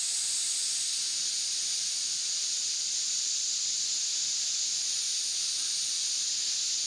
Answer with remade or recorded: recorded